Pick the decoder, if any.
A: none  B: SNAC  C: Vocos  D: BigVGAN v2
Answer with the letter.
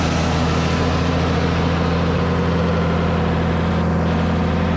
A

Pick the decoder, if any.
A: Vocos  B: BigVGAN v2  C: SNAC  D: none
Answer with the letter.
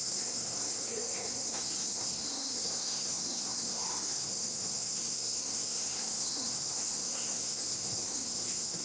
C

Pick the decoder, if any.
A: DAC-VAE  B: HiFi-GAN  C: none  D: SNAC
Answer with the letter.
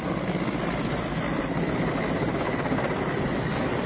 C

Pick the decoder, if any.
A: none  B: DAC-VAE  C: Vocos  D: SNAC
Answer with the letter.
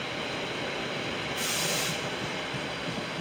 A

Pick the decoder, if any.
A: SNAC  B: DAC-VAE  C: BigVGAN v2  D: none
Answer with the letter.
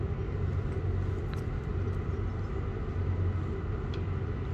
D